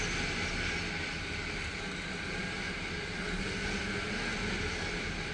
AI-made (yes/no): no